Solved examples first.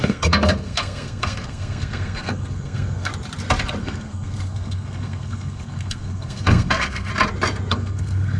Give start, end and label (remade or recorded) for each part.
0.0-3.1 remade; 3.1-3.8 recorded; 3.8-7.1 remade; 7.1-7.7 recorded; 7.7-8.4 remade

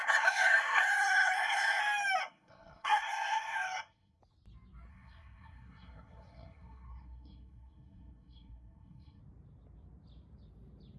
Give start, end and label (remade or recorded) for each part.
0.0-1.8 remade; 1.8-2.2 recorded; 2.2-4.2 remade; 4.2-4.9 recorded; 4.9-9.2 remade; 9.2-11.0 recorded

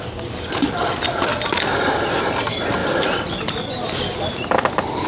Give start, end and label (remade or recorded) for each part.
0.0-5.1 recorded

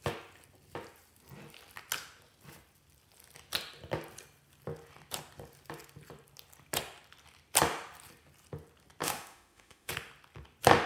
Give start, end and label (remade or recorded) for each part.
0.0-9.0 recorded; 9.0-9.9 remade; 9.9-10.9 recorded

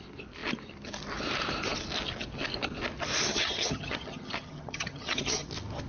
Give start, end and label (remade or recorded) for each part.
0.0-3.3 recorded; 3.3-5.5 remade; 5.5-5.9 recorded

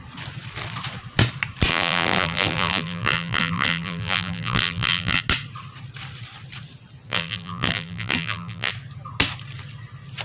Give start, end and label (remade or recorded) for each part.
0.0-1.7 recorded; 1.7-5.2 remade; 5.2-7.1 recorded; 7.1-8.7 remade; 8.7-10.2 recorded

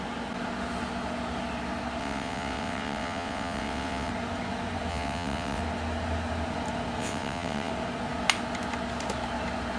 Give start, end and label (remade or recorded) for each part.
0.0-2.0 recorded; 2.0-4.1 remade; 4.1-4.9 recorded; 4.9-5.6 remade; 5.6-7.0 recorded; 7.0-7.7 remade; 7.7-9.8 recorded